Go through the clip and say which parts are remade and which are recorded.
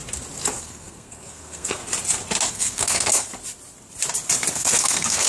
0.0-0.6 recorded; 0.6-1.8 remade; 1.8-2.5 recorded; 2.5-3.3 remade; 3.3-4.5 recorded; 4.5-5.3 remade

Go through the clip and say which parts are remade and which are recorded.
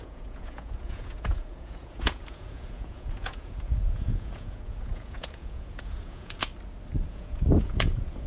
0.0-6.5 remade; 6.5-7.1 recorded; 7.1-8.3 remade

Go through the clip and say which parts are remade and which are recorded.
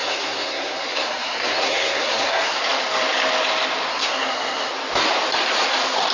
0.0-2.6 remade; 2.6-3.9 recorded; 3.9-4.7 remade; 4.7-6.1 recorded